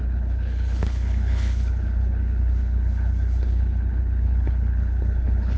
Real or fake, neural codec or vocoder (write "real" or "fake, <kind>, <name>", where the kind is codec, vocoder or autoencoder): fake, codec, HILCodec